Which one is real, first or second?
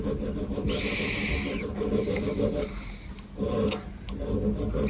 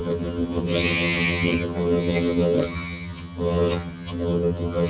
first